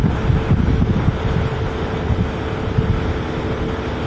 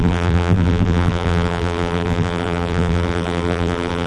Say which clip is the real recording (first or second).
first